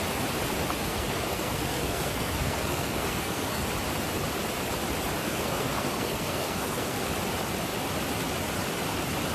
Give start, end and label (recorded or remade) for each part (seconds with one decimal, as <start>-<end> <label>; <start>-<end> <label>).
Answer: 0.0-0.8 recorded; 0.8-3.6 remade; 3.6-5.2 recorded; 5.2-7.1 remade; 7.1-9.3 recorded